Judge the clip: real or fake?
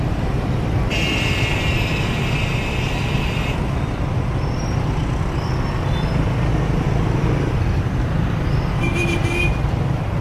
real